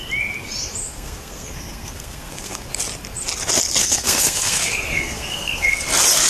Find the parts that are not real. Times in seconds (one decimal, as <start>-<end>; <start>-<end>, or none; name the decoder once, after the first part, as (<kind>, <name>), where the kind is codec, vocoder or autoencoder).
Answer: 0.8-2.7 (codec, SNAC); 3.8-5.8